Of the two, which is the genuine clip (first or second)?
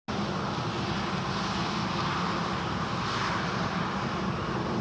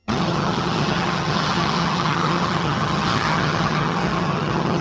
first